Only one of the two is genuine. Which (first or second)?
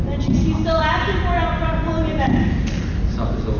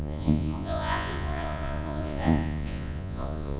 first